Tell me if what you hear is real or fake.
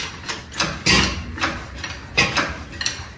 real